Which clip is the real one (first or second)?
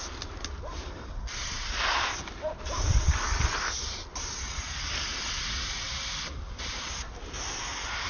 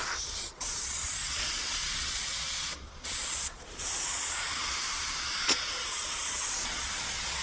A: first